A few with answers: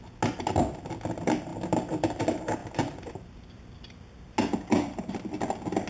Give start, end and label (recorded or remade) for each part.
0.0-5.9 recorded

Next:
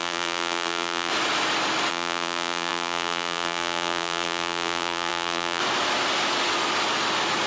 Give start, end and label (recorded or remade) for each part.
0.0-1.1 remade; 1.1-1.9 recorded; 1.9-5.6 remade; 5.6-7.5 recorded

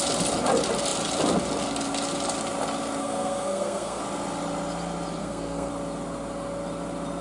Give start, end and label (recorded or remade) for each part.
0.0-3.0 recorded; 3.0-4.0 remade; 4.0-5.2 recorded; 5.2-5.7 remade; 5.7-7.2 recorded

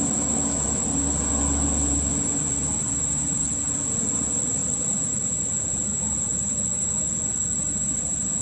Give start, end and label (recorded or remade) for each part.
0.0-8.4 recorded